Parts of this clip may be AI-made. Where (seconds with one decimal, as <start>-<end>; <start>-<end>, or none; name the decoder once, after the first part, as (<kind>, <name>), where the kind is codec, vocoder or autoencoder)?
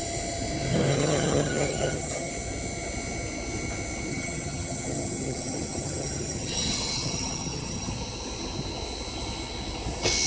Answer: 0.9-2.3 (vocoder, HiFi-GAN); 4.1-7.9